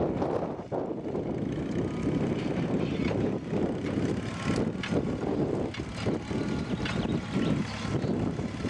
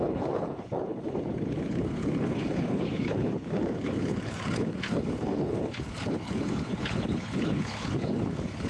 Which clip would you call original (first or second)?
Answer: first